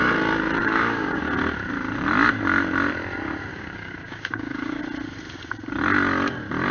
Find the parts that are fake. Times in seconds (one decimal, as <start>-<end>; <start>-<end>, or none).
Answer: 0.6-1.2; 3.5-4.8